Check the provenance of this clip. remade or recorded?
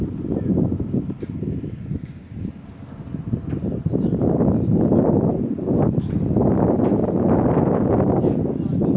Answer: recorded